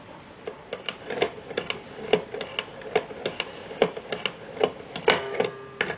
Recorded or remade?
recorded